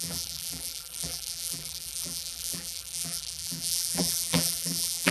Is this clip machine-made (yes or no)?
yes